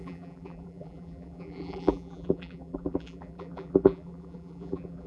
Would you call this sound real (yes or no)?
no